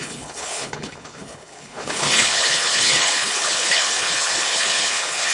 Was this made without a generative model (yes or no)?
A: no